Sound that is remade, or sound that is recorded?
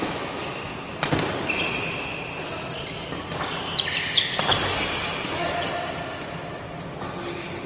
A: recorded